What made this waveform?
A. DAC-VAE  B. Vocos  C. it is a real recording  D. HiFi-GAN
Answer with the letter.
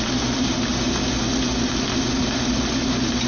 C